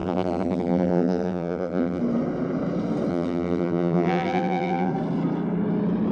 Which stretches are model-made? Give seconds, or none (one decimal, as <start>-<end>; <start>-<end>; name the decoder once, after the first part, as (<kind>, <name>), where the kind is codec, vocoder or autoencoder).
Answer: 0.0-2.0 (vocoder, BigVGAN v2); 3.1-4.9